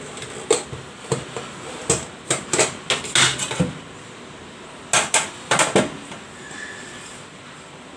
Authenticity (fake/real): real